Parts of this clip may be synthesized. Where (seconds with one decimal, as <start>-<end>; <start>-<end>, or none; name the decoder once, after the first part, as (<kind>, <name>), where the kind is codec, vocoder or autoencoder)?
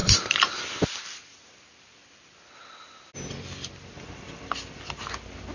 0.0-0.6 (vocoder, BigVGAN v2)